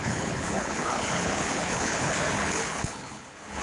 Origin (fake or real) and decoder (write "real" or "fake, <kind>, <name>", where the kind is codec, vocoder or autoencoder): fake, codec, HILCodec